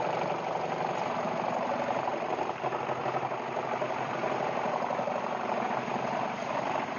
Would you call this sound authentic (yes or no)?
yes